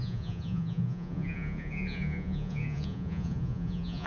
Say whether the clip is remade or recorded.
remade